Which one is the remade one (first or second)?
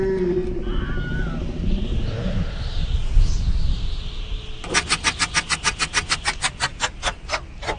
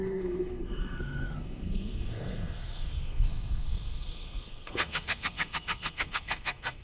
second